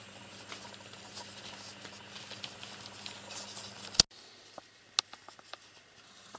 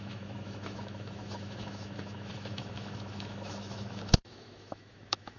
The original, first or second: first